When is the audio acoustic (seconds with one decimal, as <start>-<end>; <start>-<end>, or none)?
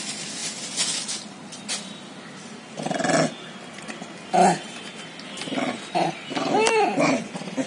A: 0.0-7.7